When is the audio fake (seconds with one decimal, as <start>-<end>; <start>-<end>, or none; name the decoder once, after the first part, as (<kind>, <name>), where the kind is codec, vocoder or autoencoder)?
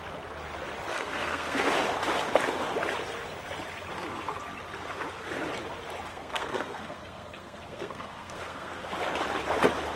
0.9-1.7 (codec, SNAC); 6.1-8.9